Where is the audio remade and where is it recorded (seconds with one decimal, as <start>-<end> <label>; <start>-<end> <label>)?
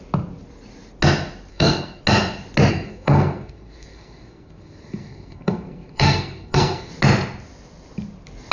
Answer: 0.0-1.5 recorded; 1.5-2.0 remade; 2.0-2.7 recorded; 2.7-6.9 remade; 6.9-8.5 recorded